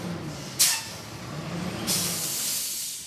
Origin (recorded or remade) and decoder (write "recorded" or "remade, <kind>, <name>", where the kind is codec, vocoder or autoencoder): recorded